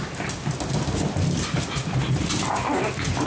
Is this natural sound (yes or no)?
yes